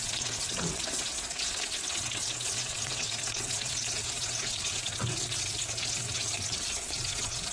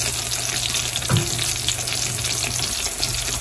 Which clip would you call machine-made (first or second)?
first